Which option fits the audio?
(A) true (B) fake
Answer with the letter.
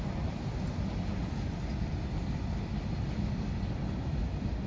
A